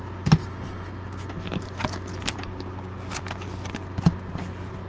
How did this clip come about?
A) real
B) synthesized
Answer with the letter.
A